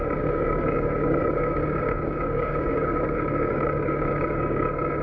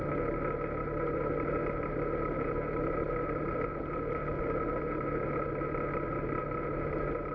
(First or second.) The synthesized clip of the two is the first